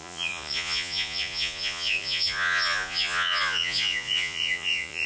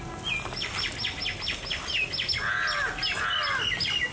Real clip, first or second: second